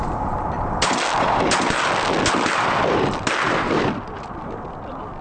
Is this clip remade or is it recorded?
recorded